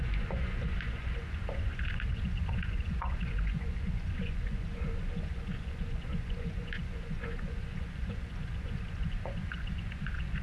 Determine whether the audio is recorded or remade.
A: remade